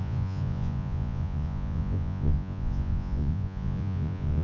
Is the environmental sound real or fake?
fake